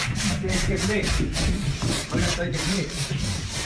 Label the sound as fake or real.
fake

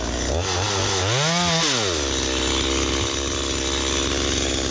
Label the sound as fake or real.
real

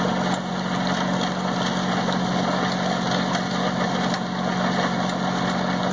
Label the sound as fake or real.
real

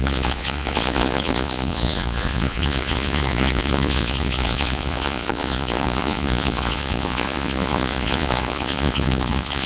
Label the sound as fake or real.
fake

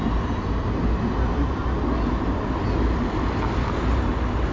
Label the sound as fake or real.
real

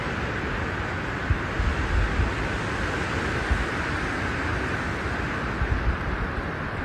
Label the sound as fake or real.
real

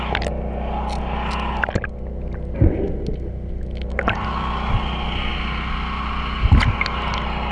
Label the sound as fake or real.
real